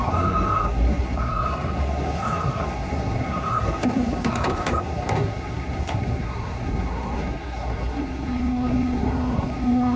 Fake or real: fake